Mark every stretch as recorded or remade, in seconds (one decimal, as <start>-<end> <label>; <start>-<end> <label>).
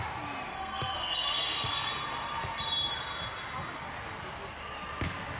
0.0-0.5 recorded; 0.5-1.9 remade; 1.9-5.4 recorded